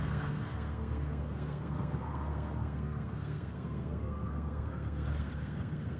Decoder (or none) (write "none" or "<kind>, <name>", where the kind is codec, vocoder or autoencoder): codec, SNAC